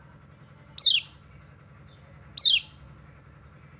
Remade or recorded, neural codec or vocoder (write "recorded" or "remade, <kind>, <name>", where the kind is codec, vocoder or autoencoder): recorded